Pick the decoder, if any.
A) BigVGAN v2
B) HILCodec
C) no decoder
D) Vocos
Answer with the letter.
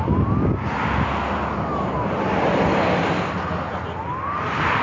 C